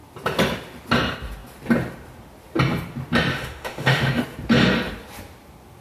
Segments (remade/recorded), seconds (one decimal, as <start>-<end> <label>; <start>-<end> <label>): 0.0-3.3 recorded; 3.3-4.2 remade; 4.2-5.8 recorded